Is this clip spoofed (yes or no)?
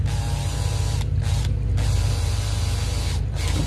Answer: no